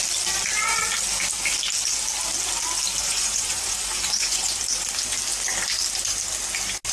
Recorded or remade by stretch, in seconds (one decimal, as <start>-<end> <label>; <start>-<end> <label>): 0.0-3.0 recorded; 3.0-4.6 remade; 4.6-6.9 recorded